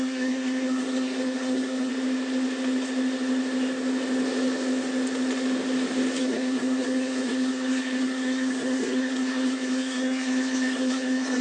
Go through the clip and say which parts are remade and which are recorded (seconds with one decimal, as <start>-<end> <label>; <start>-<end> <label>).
0.0-1.9 remade; 1.9-6.2 recorded; 6.2-11.4 remade